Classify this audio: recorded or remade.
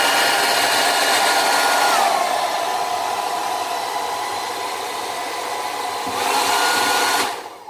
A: recorded